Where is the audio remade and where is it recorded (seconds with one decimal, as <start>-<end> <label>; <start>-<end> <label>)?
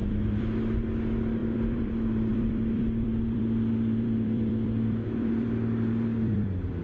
0.0-0.8 remade; 0.8-1.4 recorded; 1.4-1.9 remade; 1.9-2.3 recorded; 2.3-6.8 remade